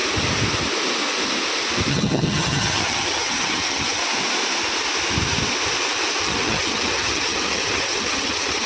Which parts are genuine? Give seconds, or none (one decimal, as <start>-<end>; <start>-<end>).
0.0-1.9; 4.0-6.2